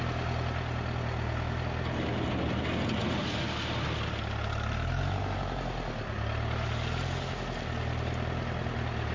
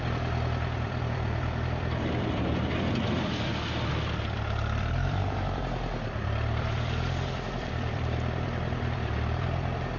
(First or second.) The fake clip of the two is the second